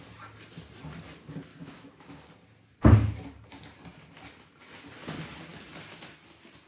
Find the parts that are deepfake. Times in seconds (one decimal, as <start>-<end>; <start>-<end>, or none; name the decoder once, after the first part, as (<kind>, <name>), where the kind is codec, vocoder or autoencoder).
1.5-2.2 (autoencoder, DAC-VAE)